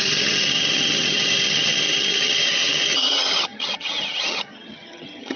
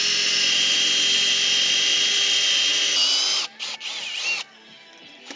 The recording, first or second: second